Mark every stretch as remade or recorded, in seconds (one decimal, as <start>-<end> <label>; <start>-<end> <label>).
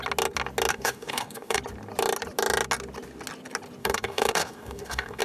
0.0-0.7 recorded; 0.7-1.6 remade; 1.6-3.8 recorded; 3.8-5.2 remade